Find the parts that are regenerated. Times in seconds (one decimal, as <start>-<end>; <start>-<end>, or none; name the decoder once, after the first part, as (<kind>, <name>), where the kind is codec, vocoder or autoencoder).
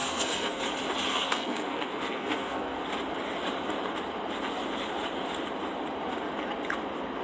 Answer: 0.0-0.6 (codec, SNAC); 1.1-2.8